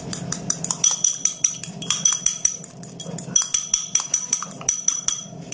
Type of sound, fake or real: fake